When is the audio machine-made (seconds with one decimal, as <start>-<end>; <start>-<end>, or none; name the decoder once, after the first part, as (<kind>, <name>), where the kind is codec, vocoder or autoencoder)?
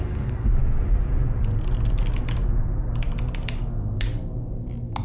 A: 0.0-0.6 (codec, DAC); 3.6-4.1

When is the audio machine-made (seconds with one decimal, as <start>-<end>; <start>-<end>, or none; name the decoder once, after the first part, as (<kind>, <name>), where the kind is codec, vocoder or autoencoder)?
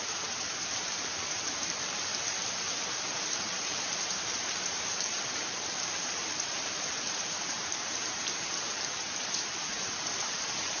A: 0.0-2.1 (vocoder, BigVGAN v2); 3.0-10.8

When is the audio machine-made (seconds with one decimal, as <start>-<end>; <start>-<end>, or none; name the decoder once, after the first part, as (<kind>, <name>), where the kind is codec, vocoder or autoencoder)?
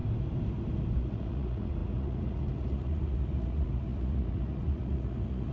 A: 1.0-5.5 (vocoder, Vocos)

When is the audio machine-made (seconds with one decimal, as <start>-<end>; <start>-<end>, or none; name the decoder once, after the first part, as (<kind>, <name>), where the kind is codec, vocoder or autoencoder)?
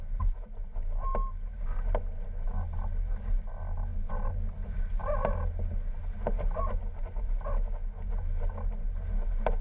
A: 3.9-4.5 (vocoder, BigVGAN v2)